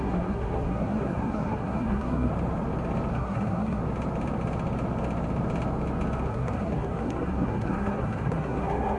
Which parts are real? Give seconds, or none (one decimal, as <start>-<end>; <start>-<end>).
2.3-3.1; 3.8-6.3